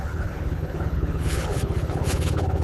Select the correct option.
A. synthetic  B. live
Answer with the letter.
A